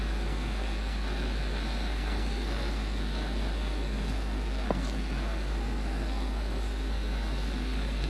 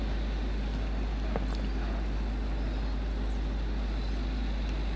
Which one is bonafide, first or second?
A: second